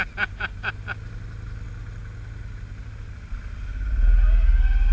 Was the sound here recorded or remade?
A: recorded